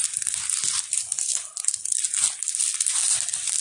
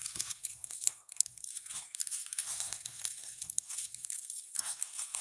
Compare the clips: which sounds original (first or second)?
first